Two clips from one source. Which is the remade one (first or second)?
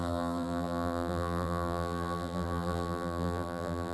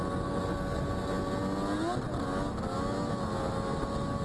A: first